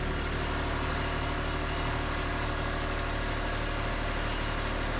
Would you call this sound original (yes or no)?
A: yes